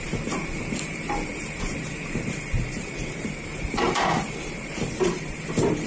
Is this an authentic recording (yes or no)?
no